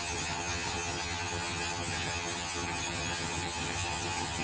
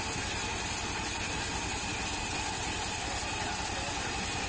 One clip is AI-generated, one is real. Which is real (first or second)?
second